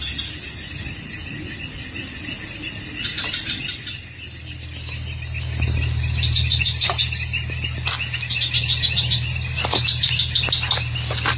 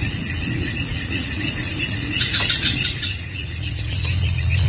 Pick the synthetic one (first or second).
second